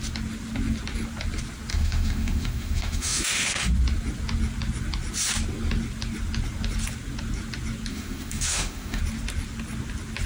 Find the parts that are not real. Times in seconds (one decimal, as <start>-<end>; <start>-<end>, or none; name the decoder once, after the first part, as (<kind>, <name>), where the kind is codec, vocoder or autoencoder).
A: 1.7-3.7 (autoencoder, DAC-VAE); 7.9-9.0